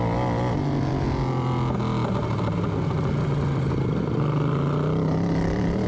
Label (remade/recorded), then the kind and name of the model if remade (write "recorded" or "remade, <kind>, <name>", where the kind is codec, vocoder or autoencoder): recorded